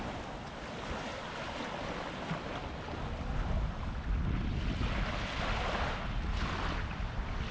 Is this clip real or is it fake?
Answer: real